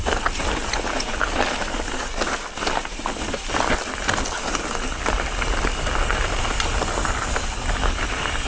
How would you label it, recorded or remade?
recorded